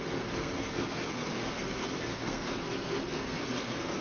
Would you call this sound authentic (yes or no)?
no